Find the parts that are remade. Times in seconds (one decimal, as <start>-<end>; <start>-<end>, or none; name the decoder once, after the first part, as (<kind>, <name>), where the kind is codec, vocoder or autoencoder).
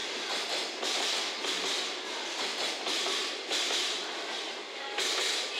none